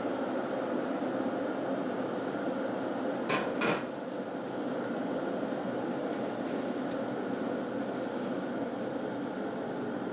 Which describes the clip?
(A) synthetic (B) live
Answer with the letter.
B